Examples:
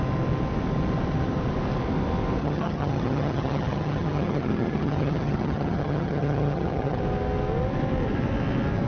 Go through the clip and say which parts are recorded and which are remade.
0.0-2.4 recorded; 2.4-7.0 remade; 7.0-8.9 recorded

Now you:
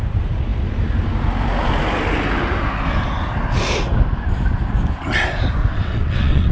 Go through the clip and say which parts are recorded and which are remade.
0.0-5.7 recorded; 5.7-6.5 remade

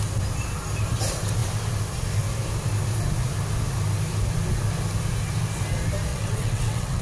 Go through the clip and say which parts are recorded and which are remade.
0.0-6.1 recorded; 6.1-7.0 remade

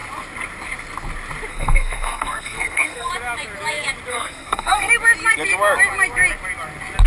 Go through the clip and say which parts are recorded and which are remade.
0.0-1.5 recorded; 1.5-3.1 remade; 3.1-4.1 recorded; 4.1-4.9 remade; 4.9-7.1 recorded

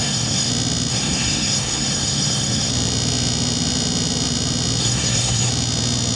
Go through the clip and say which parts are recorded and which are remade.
0.0-0.5 remade; 0.5-0.9 recorded; 0.9-2.7 remade; 2.7-4.8 recorded; 4.8-5.5 remade; 5.5-6.2 recorded

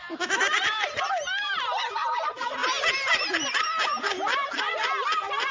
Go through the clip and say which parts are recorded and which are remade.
0.0-5.5 recorded